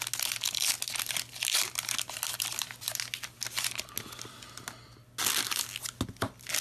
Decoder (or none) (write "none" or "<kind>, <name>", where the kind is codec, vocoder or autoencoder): none